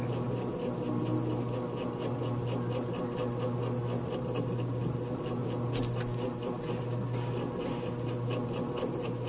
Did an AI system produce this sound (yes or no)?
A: no